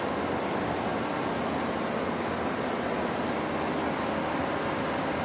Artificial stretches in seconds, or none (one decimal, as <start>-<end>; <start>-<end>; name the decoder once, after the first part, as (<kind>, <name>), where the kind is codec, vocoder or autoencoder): none